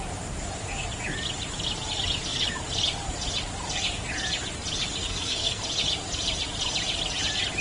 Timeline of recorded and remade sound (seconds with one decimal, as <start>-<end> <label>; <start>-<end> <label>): 0.0-5.0 recorded; 5.0-5.6 remade; 5.6-7.6 recorded